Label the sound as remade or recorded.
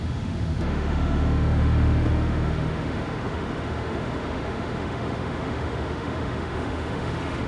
remade